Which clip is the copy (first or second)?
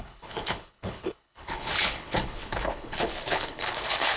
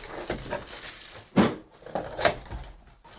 first